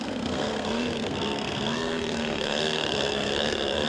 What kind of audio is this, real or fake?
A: fake